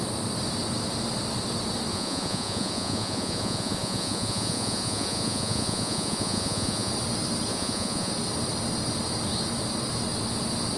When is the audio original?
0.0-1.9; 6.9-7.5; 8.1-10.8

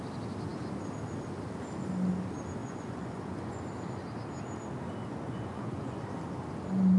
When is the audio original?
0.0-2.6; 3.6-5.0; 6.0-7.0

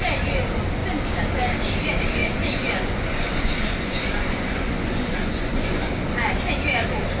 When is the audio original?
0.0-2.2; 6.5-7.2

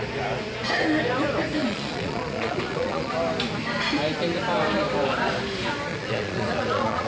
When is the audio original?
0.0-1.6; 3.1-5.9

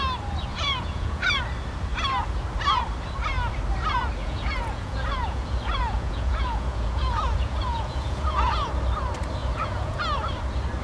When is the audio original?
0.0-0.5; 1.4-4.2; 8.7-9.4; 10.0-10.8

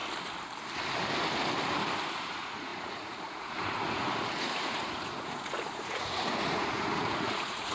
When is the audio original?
0.0-2.0

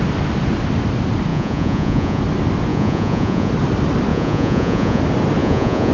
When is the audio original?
0.0-1.3; 2.2-2.7; 3.5-4.1; 5.0-5.4

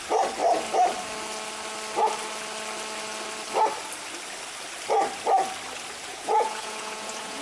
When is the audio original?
0.0-6.1